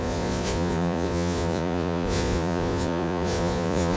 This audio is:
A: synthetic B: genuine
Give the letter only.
A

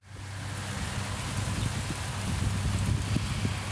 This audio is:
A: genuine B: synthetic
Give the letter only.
A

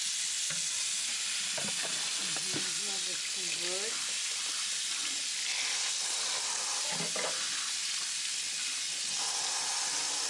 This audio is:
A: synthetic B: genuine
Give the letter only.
B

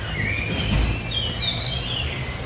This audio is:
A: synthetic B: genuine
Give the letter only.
B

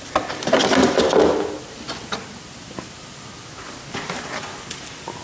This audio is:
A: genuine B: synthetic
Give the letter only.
A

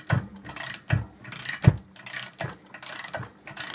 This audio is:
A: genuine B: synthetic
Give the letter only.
A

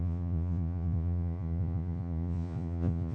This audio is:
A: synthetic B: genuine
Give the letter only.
A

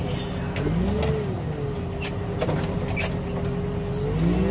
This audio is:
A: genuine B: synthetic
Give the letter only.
A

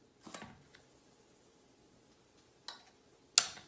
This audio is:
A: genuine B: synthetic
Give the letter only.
A